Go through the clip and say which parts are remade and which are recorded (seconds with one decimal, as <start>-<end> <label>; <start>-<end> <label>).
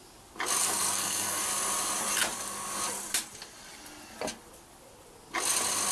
0.0-0.6 recorded; 0.6-1.4 remade; 1.4-5.9 recorded